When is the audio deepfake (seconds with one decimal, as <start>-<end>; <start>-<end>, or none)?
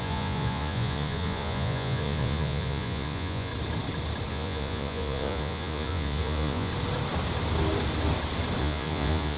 0.0-3.5; 4.3-6.7; 8.6-9.4